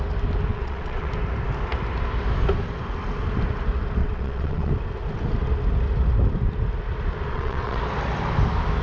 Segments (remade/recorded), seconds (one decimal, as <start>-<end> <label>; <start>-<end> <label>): 0.0-0.5 recorded; 0.5-1.1 remade; 1.1-4.0 recorded; 4.0-4.7 remade; 4.7-7.3 recorded; 7.3-7.8 remade; 7.8-8.8 recorded